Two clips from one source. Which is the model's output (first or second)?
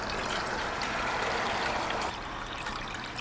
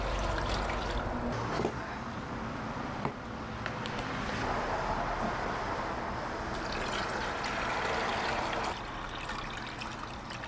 first